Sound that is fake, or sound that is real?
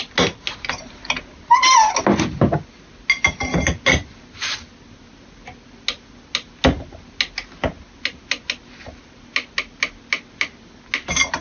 real